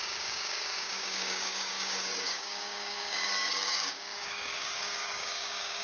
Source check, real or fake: fake